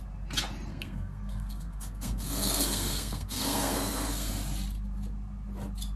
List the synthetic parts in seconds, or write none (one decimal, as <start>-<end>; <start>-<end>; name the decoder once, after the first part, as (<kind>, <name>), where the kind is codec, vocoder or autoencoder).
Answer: 0.7-4.3 (codec, SNAC)